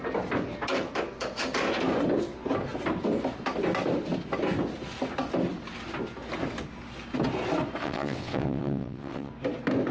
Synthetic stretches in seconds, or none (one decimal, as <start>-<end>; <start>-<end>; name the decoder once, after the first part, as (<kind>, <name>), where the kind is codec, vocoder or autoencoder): 7.8-9.3 (vocoder, WaveNeXt)